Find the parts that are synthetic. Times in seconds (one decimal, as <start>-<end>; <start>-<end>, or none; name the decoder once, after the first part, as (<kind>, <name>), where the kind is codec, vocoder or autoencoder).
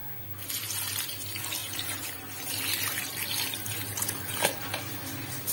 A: 1.6-2.2 (vocoder, Vocos); 3.9-4.6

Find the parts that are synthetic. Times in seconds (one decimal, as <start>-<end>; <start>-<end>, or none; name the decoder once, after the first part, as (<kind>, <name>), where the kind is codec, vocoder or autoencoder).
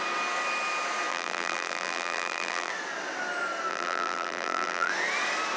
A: 1.1-2.7 (vocoder, BigVGAN v2); 3.7-4.9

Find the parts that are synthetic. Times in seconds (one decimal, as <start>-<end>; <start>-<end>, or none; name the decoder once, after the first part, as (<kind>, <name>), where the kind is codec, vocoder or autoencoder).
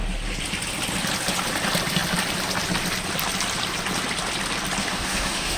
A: 4.8-5.6 (autoencoder, DAC-VAE)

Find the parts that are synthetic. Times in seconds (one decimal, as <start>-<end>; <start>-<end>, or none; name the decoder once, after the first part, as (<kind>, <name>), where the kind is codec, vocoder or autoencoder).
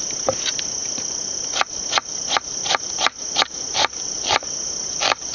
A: none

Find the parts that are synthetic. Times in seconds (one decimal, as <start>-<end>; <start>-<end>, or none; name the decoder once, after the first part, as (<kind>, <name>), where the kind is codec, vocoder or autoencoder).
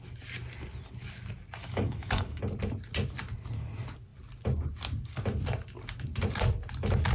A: 1.6-2.4 (codec, DAC)